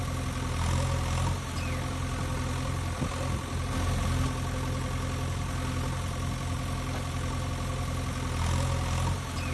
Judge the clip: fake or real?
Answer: real